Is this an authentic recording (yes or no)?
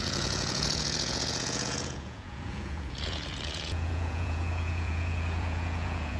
no